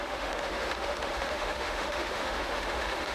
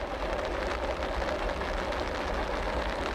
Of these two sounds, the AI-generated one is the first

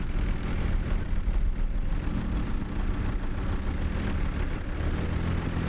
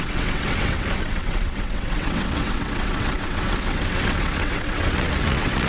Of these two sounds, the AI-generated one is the second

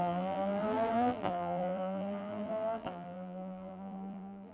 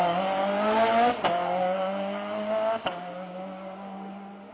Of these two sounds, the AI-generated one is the first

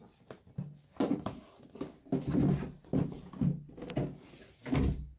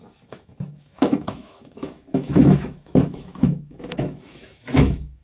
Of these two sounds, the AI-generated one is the second